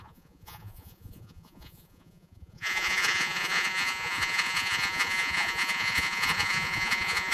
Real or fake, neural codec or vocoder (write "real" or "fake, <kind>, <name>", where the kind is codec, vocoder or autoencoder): fake, vocoder, Vocos